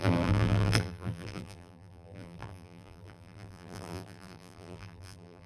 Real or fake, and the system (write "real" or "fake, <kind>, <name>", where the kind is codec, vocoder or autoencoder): fake, vocoder, BigVGAN v2